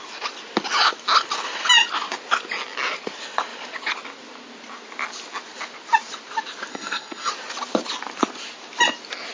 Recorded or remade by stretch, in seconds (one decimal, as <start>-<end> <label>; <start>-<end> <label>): 0.0-6.7 recorded; 6.7-7.3 remade; 7.3-9.3 recorded